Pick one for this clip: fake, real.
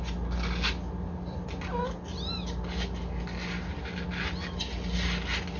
real